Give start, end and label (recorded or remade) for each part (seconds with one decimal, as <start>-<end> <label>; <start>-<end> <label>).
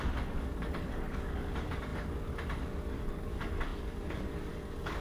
0.0-5.0 remade